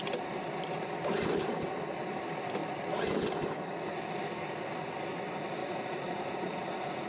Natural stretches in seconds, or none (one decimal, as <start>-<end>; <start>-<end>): 0.0-5.6